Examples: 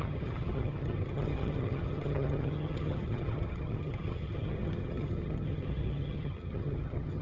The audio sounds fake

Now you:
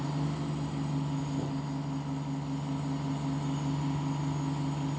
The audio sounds real